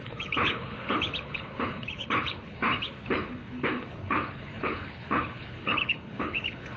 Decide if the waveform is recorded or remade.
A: remade